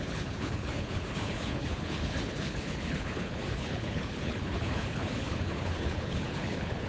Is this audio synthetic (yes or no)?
yes